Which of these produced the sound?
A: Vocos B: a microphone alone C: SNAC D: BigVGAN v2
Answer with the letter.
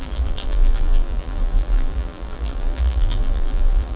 D